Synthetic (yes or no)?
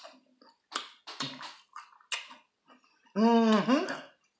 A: no